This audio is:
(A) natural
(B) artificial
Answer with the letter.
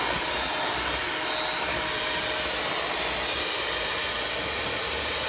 A